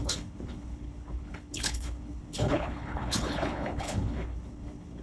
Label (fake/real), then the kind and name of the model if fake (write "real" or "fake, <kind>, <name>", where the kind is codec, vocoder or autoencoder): fake, codec, HILCodec